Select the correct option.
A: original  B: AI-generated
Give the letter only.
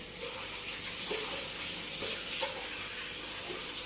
A